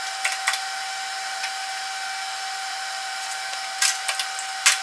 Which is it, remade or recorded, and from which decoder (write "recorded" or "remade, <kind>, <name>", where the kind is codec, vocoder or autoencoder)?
recorded